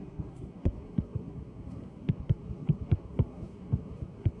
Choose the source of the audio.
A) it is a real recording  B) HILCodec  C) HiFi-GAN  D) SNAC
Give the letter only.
D